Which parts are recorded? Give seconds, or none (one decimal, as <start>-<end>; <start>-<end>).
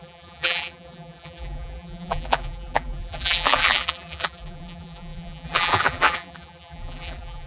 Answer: none